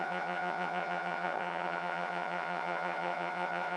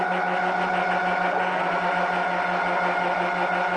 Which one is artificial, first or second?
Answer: first